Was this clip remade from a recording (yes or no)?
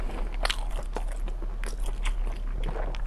no